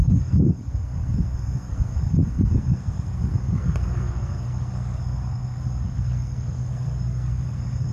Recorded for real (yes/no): no